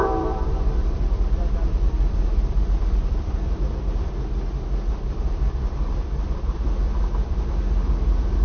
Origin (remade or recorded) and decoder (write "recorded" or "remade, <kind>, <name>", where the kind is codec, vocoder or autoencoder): remade, vocoder, BigVGAN v2